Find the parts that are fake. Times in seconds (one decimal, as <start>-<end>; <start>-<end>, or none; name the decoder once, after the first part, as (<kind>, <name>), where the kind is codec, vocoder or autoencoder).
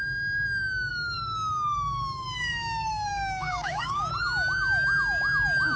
0.9-4.1 (codec, DAC)